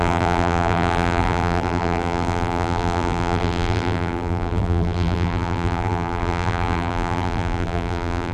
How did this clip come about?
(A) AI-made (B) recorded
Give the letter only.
A